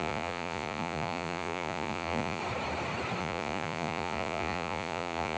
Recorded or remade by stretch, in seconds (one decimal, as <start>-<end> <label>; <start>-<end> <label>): 0.0-2.4 remade; 2.4-3.2 recorded; 3.2-5.4 remade